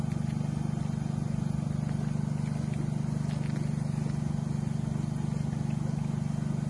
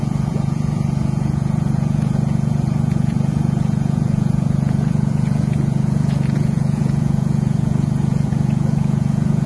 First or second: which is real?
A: first